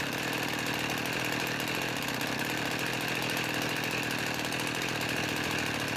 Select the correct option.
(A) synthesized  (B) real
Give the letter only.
B